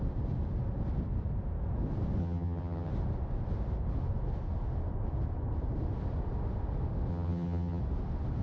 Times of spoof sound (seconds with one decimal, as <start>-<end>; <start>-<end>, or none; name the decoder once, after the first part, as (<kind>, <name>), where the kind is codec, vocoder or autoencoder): 2.2-2.9 (vocoder, HiFi-GAN); 7.1-7.8